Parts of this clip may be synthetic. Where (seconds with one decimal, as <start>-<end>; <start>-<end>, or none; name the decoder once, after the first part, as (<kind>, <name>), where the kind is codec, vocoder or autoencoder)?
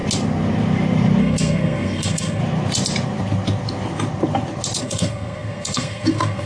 1.2-2.4 (codec, SNAC); 4.8-6.5